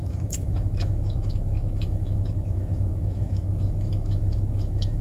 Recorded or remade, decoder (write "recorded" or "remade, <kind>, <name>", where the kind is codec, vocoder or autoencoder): remade, autoencoder, DAC-VAE